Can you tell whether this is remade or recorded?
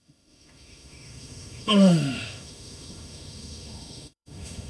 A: remade